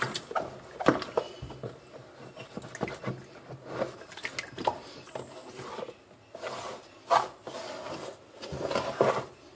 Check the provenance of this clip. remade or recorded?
recorded